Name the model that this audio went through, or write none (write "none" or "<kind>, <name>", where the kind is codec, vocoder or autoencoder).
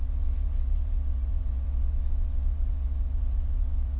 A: vocoder, WaveNeXt